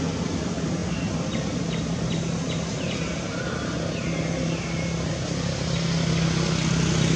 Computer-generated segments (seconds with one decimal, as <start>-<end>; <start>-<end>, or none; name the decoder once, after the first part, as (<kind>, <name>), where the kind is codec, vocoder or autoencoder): none